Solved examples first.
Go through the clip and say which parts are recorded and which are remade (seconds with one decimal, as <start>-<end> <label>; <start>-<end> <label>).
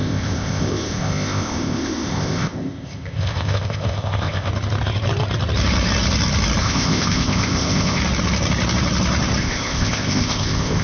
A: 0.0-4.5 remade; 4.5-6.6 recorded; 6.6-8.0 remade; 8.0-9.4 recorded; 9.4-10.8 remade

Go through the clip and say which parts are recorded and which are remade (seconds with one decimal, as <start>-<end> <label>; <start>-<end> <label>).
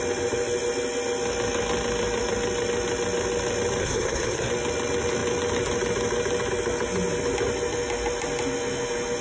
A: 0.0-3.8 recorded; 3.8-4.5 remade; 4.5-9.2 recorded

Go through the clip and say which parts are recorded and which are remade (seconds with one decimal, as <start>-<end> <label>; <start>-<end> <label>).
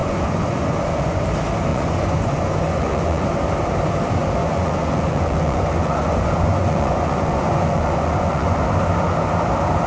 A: 0.0-1.2 remade; 1.2-1.7 recorded; 1.7-3.3 remade; 3.3-4.4 recorded; 4.4-8.6 remade; 8.6-9.9 recorded